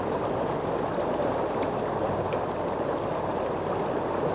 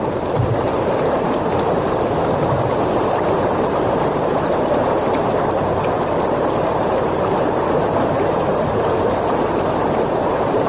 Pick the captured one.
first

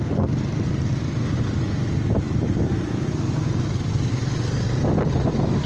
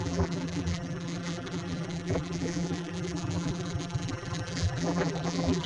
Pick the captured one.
first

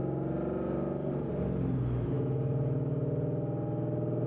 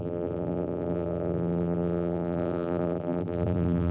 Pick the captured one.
first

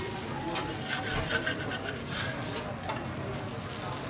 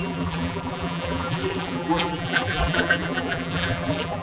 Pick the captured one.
first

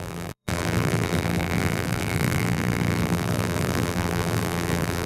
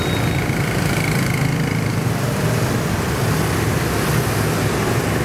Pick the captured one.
second